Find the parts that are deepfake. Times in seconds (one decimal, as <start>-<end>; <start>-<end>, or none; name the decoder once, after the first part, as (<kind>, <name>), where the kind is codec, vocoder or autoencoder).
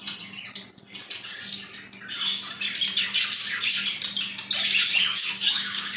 5.0-6.0 (codec, DAC)